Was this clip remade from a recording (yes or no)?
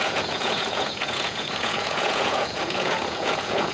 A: yes